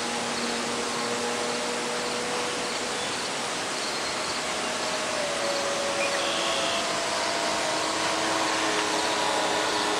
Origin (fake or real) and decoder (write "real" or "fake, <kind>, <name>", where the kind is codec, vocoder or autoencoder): real